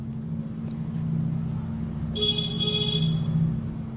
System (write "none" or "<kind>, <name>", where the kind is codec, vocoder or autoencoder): none